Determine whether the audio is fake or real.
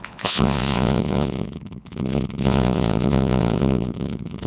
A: fake